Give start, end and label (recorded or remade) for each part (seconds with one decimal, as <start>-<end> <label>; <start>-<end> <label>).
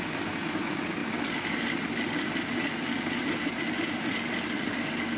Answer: 0.0-5.2 recorded